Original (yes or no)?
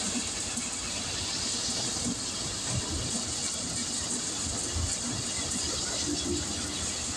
yes